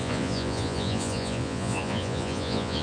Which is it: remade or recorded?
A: remade